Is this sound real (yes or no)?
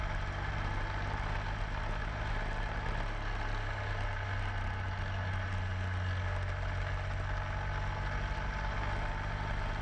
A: yes